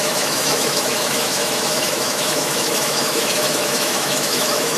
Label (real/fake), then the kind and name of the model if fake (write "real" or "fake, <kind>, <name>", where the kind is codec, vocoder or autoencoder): fake, autoencoder, DAC-VAE